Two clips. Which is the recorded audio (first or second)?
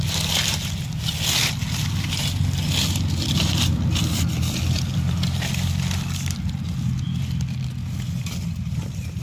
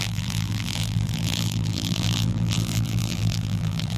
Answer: first